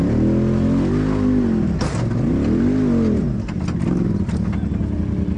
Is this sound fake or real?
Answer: real